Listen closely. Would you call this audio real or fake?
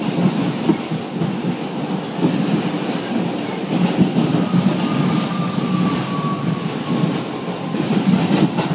real